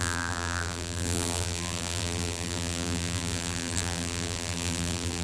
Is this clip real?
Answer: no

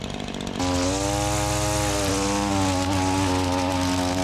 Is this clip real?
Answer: yes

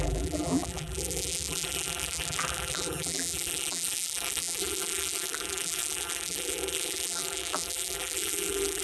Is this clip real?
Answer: no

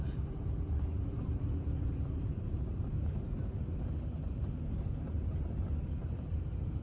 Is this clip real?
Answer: no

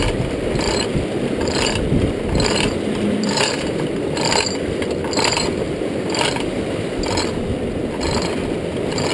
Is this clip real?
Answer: no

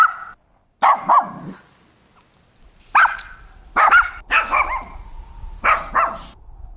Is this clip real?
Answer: yes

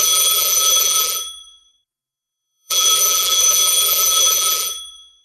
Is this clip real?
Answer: no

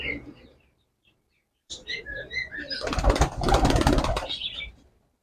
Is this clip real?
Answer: no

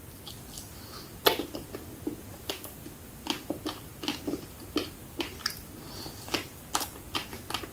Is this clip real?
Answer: yes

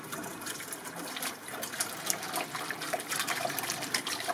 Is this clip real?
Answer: no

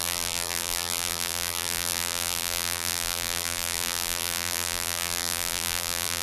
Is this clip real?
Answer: no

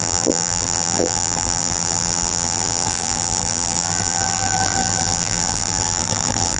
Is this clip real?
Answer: no